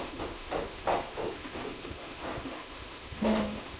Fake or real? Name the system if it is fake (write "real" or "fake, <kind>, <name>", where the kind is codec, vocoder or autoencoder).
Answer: fake, autoencoder, DAC-VAE